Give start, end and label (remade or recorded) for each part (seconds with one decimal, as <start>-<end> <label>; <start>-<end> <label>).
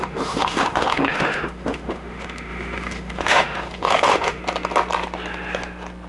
0.0-4.4 remade; 4.4-6.1 recorded